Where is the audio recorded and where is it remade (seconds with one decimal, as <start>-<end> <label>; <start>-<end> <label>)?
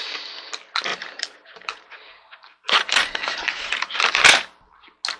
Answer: 0.0-0.9 recorded; 0.9-4.0 remade; 4.0-5.2 recorded